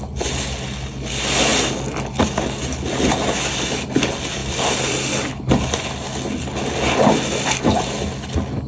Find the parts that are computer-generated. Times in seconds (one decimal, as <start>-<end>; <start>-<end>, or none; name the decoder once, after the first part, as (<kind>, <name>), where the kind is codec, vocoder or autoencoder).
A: none

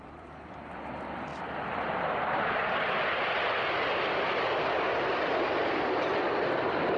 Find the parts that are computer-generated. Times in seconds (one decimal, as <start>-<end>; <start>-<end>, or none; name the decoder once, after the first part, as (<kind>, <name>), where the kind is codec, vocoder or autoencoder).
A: 0.0-7.0 (vocoder, BigVGAN v2)